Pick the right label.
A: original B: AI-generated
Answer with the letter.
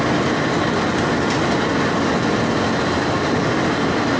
A